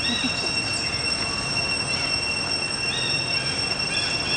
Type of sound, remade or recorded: recorded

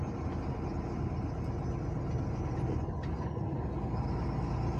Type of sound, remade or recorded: recorded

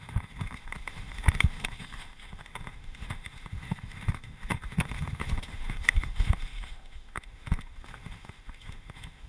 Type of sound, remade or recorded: remade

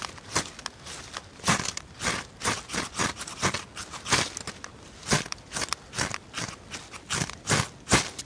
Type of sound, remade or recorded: recorded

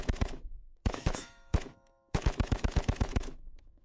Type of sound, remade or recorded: remade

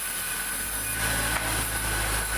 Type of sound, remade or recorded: recorded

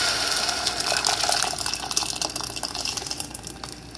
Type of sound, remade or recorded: recorded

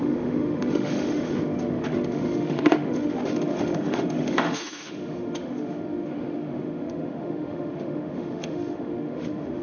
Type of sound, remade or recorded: remade